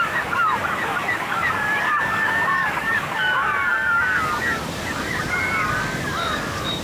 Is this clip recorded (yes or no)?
no